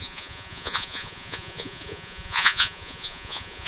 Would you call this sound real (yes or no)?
no